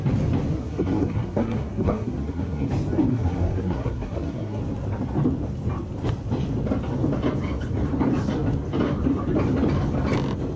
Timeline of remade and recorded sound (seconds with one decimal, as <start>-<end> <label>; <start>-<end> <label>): 0.0-0.5 recorded; 0.5-2.7 remade; 2.7-3.1 recorded; 3.1-4.6 remade; 4.6-10.6 recorded